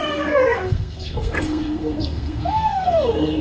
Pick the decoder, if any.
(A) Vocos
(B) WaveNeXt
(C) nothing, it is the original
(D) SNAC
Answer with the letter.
D